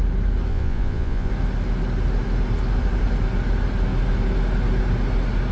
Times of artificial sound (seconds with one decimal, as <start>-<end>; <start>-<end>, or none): 0.5-1.3

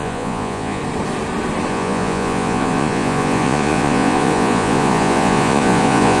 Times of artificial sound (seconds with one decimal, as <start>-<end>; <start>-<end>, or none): 0.0-0.8; 1.7-6.2

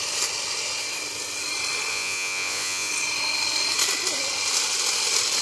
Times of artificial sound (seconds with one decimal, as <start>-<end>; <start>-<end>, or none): 1.9-2.9

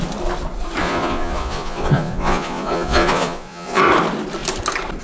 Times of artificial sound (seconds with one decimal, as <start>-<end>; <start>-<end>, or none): 0.8-3.8

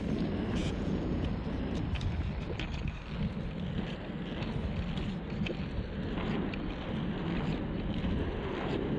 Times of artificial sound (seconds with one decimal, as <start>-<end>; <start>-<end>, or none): 0.6-1.3